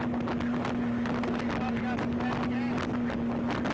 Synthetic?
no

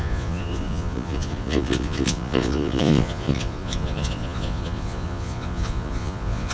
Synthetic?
yes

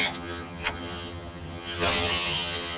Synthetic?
yes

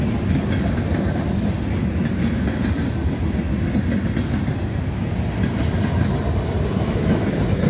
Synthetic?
no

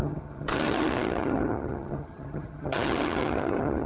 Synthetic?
yes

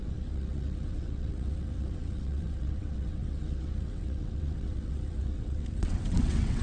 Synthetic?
yes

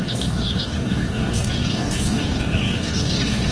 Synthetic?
yes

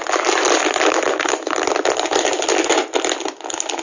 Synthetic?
no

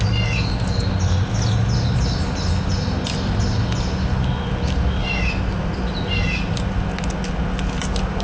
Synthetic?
no